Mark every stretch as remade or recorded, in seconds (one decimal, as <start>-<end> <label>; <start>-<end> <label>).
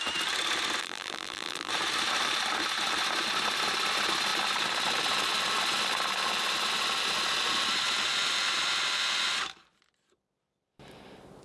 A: 0.0-0.8 recorded; 0.8-1.7 remade; 1.7-11.4 recorded